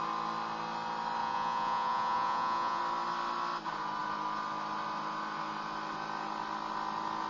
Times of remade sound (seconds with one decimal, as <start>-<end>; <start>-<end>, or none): 1.2-2.8